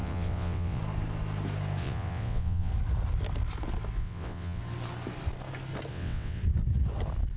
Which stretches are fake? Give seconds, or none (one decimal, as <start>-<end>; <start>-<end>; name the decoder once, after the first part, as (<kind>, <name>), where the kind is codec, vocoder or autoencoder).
0.0-0.8 (vocoder, WaveNeXt); 1.8-2.7; 4.0-4.6; 5.9-6.4